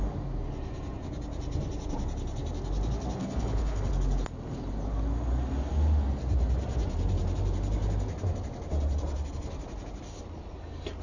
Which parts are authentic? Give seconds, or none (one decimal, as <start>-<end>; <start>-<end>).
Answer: 0.0-3.2; 3.9-11.0